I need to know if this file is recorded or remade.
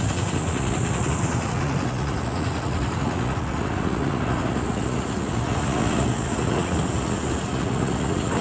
remade